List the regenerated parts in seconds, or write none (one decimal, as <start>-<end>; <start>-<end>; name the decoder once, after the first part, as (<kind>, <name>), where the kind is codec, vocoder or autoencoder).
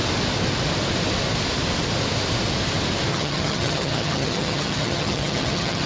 3.1-5.9 (vocoder, HiFi-GAN)